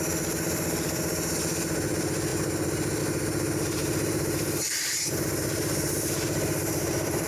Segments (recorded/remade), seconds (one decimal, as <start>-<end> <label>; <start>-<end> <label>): 0.0-3.8 recorded; 3.8-7.3 remade